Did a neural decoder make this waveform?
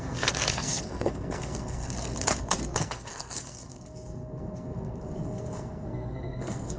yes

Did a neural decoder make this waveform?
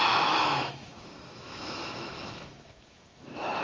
yes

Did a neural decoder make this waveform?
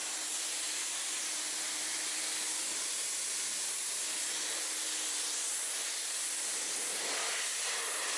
no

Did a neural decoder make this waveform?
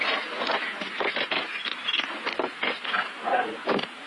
no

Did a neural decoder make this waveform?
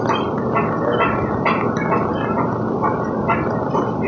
no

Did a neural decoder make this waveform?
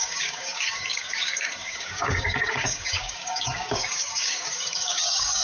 yes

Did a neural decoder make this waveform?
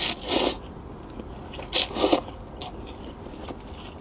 no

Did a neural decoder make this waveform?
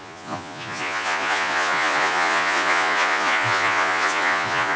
yes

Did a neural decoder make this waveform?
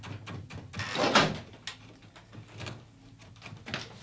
no